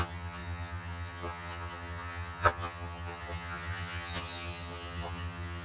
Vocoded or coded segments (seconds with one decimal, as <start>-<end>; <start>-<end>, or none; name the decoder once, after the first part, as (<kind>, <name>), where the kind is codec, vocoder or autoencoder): 0.0-5.6 (vocoder, HiFi-GAN)